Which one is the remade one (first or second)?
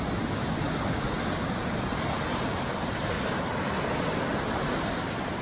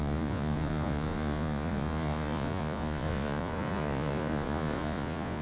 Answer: second